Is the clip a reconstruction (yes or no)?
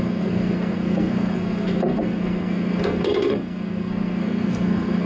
yes